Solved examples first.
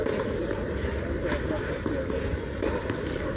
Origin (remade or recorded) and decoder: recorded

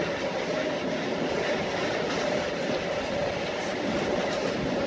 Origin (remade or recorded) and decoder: recorded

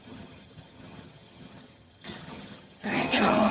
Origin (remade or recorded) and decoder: remade, vocoder, HiFi-GAN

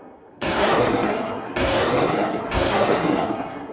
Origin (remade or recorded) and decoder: remade, codec, SNAC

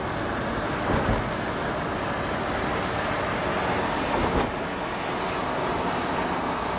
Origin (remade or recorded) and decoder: recorded